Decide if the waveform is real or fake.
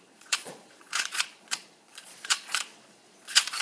fake